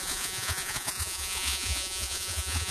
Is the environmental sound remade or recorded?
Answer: remade